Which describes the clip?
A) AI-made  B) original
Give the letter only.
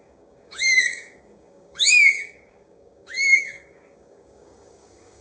A